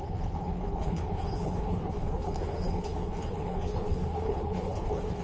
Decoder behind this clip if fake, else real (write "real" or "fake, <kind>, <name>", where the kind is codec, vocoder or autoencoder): fake, codec, HILCodec